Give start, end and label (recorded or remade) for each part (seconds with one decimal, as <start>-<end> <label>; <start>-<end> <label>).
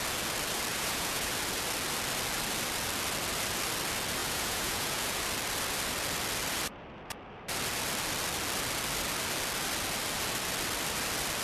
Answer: 0.0-0.7 recorded; 0.7-1.3 remade; 1.3-4.2 recorded; 4.2-5.2 remade; 5.2-11.4 recorded